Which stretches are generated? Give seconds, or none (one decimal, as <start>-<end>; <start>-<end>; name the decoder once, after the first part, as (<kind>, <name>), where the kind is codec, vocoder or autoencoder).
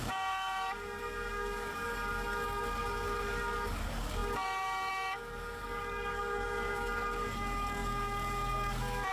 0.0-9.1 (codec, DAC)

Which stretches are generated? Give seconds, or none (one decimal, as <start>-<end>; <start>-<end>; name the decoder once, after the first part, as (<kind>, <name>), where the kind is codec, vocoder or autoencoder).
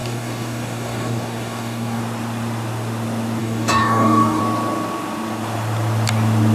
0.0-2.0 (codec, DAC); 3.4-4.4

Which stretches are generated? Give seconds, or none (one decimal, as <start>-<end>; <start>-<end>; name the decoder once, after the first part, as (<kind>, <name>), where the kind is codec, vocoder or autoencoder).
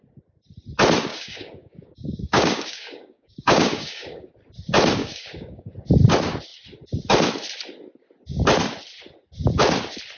1.1-4.3 (codec, DAC); 5.0-5.7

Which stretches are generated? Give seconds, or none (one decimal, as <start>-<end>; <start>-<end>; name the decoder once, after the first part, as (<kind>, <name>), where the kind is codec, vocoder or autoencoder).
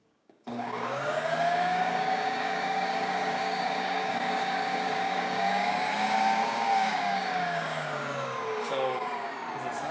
0.0-9.4 (codec, DAC)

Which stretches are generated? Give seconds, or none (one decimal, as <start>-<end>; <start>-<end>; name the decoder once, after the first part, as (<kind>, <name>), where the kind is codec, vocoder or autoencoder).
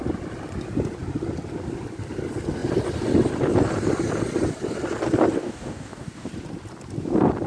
5.4-6.3 (codec, DAC)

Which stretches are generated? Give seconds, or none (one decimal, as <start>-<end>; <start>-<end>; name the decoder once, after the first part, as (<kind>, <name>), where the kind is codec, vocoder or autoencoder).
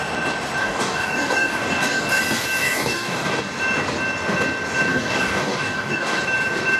0.6-2.2 (codec, DAC); 2.6-3.4; 4.9-6.2